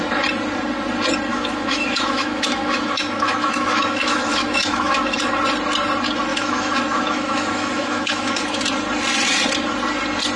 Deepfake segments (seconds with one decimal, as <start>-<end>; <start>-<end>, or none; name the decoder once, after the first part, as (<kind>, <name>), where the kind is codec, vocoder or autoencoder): 1.3-5.4 (autoencoder, DAC-VAE); 6.3-8.6